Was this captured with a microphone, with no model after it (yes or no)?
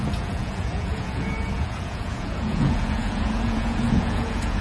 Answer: no